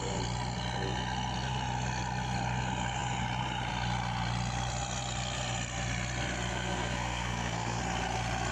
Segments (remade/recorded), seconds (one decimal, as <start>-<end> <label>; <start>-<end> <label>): 0.0-6.5 recorded; 6.5-7.8 remade; 7.8-8.5 recorded